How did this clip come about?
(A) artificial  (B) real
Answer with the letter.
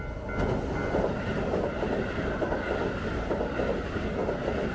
B